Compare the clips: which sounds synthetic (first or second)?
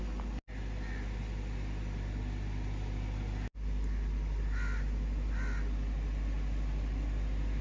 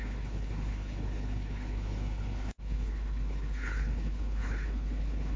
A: second